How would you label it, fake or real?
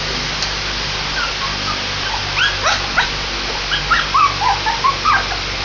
real